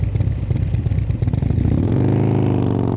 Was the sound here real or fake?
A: fake